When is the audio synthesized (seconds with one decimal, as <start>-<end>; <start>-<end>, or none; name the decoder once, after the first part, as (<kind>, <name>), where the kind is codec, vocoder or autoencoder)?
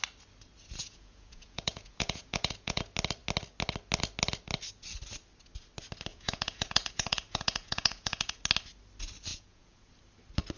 0.8-2.8 (vocoder, Vocos); 6.1-8.4; 9.3-9.9